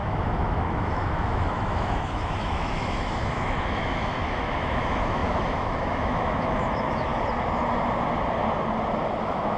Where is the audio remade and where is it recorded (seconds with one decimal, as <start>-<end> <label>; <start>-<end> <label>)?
0.0-7.1 remade; 7.1-9.2 recorded; 9.2-9.6 remade